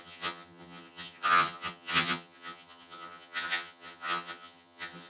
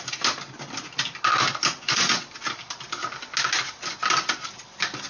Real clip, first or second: second